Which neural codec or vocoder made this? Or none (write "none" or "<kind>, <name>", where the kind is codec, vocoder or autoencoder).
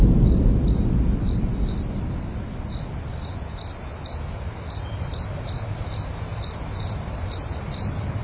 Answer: none